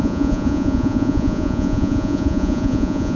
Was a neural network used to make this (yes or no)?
yes